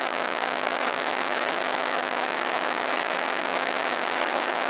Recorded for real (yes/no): no